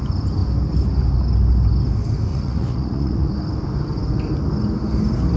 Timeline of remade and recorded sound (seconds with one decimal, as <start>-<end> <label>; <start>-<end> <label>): 0.0-2.3 recorded; 2.3-3.3 remade; 3.3-5.4 recorded